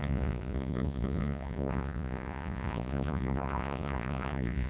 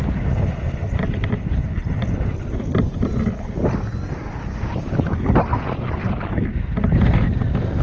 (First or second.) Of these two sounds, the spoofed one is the first